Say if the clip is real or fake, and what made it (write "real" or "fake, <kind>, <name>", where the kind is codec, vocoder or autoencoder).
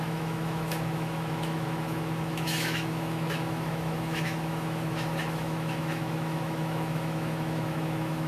fake, autoencoder, DAC-VAE